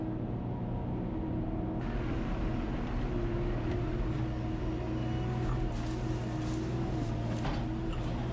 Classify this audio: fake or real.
real